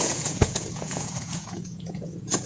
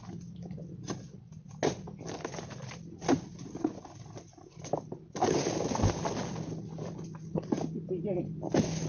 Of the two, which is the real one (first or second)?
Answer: second